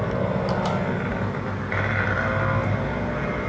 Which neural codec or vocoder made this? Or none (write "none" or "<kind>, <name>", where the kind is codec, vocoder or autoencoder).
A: none